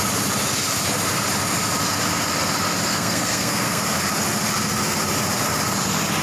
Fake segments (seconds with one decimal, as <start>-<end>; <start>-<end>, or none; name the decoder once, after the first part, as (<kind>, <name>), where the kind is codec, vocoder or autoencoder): 2.9-3.8 (codec, SNAC)